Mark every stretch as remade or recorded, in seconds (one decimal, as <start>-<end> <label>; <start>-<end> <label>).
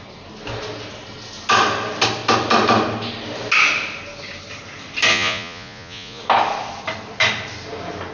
0.0-5.1 recorded; 5.1-6.2 remade; 6.2-8.1 recorded